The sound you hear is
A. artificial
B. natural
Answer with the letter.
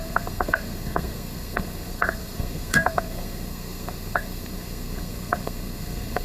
A